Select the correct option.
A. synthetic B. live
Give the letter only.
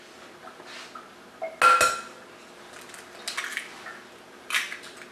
B